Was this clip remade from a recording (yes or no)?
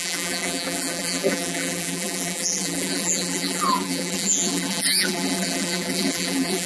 yes